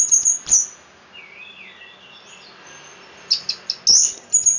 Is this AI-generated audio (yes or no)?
no